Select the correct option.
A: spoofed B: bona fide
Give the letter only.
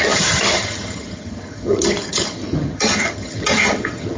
A